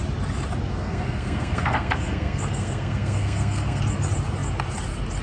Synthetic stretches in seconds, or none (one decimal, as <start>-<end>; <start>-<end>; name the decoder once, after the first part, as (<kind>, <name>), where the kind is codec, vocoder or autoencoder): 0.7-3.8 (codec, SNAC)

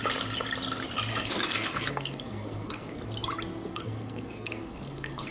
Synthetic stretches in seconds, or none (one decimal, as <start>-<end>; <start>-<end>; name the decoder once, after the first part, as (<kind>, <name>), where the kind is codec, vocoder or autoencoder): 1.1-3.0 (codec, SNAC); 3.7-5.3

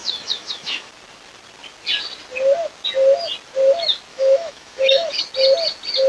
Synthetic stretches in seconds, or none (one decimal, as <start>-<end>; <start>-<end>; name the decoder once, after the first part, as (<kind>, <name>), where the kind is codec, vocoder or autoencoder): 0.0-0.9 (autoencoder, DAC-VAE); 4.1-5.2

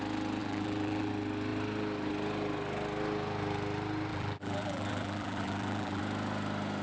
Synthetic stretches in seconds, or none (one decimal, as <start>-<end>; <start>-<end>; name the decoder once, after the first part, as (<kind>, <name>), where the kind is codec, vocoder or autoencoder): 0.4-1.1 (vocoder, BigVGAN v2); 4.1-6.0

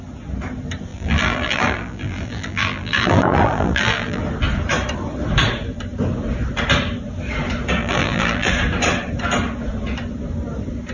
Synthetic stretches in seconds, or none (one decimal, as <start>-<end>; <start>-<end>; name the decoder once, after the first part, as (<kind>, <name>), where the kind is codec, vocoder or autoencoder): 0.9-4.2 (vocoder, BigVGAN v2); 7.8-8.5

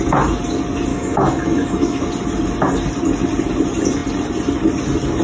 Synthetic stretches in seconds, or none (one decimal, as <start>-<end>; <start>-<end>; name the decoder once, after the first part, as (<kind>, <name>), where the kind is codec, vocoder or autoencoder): 0.9-2.1 (autoencoder, DAC-VAE)

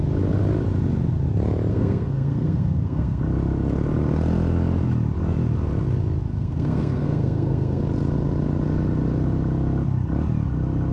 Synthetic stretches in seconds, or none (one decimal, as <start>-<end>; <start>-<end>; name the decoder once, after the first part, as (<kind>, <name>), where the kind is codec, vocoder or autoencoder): 1.7-3.2 (codec, SNAC); 6.3-7.8

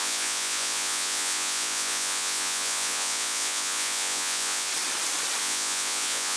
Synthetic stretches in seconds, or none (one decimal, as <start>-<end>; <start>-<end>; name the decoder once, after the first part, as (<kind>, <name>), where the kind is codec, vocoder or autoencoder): 0.0-4.7 (vocoder, Vocos); 5.4-6.4